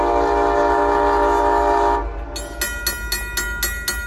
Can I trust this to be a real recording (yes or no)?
yes